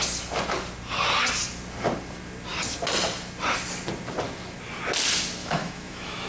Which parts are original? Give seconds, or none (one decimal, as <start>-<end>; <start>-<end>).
0.0-5.4

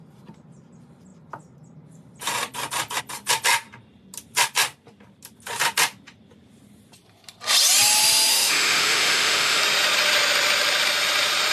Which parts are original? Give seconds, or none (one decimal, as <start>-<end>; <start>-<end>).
0.0-8.3; 9.6-11.5

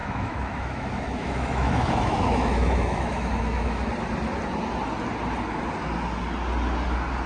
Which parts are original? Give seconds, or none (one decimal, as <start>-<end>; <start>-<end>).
3.9-7.3

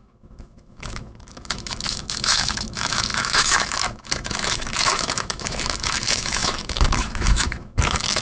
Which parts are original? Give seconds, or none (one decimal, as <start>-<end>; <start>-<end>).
none